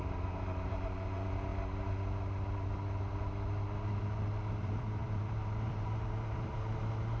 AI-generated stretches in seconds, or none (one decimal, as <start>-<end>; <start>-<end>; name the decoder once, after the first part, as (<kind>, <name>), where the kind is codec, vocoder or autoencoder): 0.0-1.5 (vocoder, BigVGAN v2); 4.5-7.2